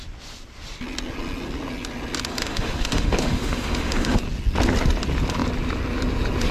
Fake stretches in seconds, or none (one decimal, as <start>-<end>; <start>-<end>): 2.3-4.2